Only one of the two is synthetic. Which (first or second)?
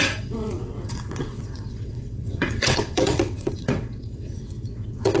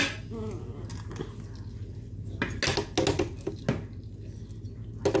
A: first